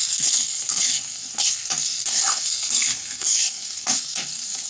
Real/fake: fake